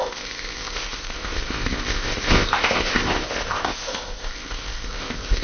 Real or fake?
fake